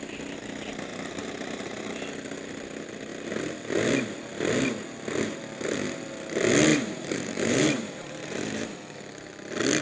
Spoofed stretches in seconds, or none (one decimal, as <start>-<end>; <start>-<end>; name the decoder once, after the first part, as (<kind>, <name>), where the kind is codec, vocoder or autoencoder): 0.9-1.8 (vocoder, BigVGAN v2); 6.7-9.0